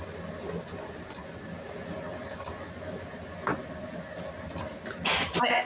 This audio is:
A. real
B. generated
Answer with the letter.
A